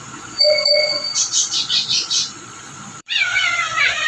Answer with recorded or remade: remade